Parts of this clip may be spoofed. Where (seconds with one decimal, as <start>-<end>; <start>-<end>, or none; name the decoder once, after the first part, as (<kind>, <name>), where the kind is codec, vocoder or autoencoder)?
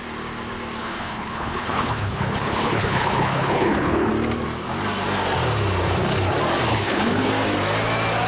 0.8-4.1 (codec, HILCodec); 6.7-7.3